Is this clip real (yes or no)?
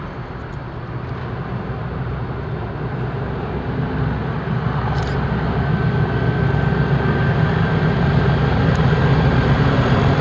yes